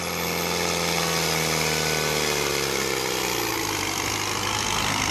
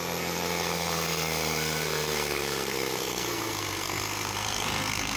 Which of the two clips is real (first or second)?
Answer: first